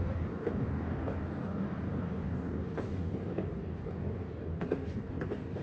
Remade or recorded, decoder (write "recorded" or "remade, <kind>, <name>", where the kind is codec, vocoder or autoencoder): remade, codec, DAC